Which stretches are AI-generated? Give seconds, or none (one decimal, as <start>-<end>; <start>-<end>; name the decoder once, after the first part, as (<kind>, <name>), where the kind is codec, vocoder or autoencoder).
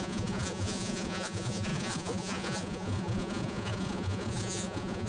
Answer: 0.0-5.1 (vocoder, Vocos)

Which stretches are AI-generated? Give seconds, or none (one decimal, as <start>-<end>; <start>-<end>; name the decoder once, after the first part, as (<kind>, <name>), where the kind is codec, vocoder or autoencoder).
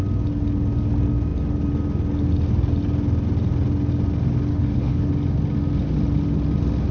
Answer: 4.5-5.1 (codec, HILCodec)